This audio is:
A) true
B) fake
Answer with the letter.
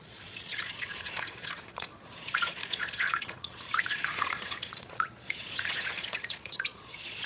B